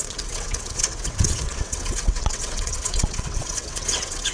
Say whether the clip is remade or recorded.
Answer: remade